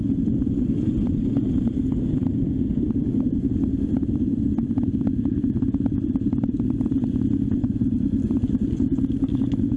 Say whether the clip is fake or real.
fake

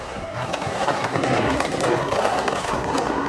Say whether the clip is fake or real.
fake